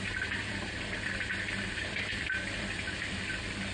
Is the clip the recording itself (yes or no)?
no